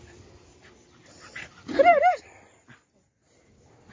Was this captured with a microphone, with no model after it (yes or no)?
yes